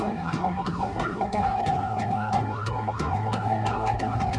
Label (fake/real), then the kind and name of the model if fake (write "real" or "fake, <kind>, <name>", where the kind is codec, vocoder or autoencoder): fake, codec, SNAC